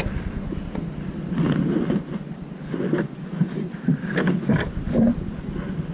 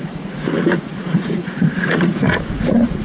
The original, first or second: first